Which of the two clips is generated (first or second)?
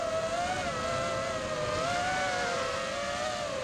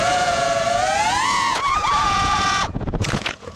second